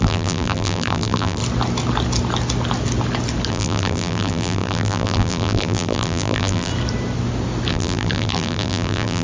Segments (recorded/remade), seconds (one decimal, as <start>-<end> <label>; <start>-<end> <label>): 0.0-1.4 remade; 1.4-3.5 recorded; 3.5-6.7 remade; 6.7-7.7 recorded; 7.7-9.2 remade